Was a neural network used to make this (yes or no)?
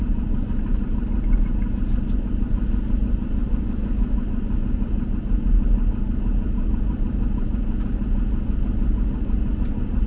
no